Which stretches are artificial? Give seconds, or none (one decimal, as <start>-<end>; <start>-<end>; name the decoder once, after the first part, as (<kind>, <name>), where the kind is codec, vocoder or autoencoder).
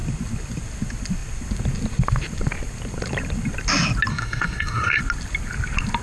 4.1-5.0 (codec, SNAC)